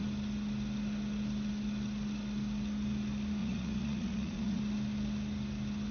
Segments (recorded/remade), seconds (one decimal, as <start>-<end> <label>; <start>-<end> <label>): 0.0-3.4 recorded; 3.4-4.6 remade; 4.6-5.9 recorded